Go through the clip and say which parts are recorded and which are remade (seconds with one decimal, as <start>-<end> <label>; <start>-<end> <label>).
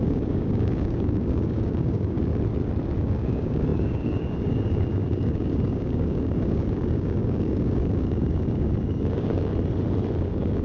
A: 0.0-2.3 remade; 2.3-3.0 recorded; 3.0-9.5 remade; 9.5-10.2 recorded; 10.2-10.6 remade